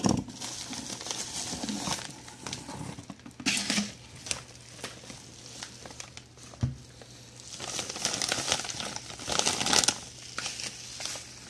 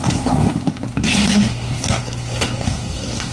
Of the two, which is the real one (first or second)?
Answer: first